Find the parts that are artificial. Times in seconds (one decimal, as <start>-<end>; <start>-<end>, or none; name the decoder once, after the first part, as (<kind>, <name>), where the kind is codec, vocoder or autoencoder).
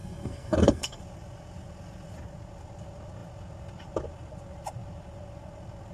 0.0-1.0 (codec, SNAC)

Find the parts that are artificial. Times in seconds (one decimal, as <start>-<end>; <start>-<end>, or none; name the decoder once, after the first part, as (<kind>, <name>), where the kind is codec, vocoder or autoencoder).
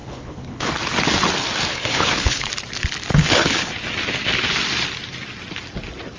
0.0-0.7 (codec, HILCodec); 1.7-2.5; 3.1-3.7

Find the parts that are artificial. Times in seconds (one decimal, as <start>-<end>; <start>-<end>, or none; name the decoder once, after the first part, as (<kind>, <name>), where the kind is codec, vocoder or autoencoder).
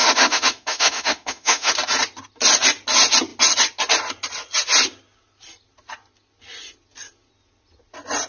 0.0-1.7 (autoencoder, DAC-VAE)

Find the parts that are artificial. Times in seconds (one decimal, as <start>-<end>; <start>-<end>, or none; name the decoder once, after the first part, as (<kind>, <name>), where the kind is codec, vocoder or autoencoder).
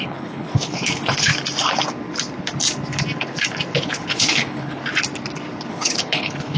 0.0-1.3 (codec, HILCodec); 3.8-4.8; 5.7-6.6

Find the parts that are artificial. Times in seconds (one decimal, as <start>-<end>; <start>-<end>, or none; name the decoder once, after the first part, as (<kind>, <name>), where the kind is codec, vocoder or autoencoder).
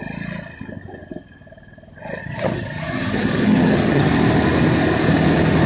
2.2-4.1 (vocoder, HiFi-GAN)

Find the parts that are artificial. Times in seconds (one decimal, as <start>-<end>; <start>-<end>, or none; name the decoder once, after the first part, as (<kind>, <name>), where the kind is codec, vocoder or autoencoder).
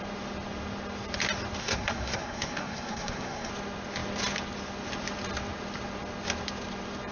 1.6-3.5 (codec, SNAC)